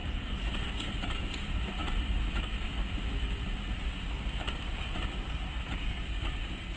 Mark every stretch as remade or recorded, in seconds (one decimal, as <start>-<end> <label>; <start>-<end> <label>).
0.0-6.8 recorded